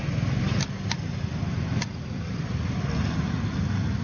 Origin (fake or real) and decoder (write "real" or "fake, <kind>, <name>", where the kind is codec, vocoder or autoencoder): real